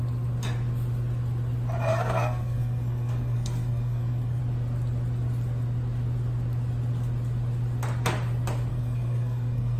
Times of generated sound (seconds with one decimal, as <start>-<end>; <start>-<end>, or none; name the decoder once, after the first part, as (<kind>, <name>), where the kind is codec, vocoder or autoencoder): 1.9-4.4 (codec, SNAC); 8.7-9.8